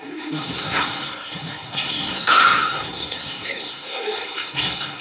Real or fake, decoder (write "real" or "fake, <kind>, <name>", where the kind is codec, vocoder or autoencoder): fake, codec, SNAC